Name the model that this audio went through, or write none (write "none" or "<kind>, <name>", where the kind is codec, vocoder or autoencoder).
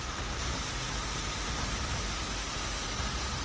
none